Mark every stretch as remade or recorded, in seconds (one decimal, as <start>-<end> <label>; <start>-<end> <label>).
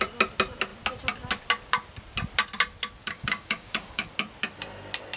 0.0-3.0 recorded; 3.0-4.1 remade; 4.1-5.2 recorded